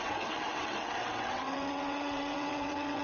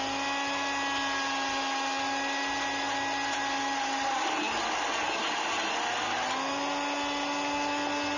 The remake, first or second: first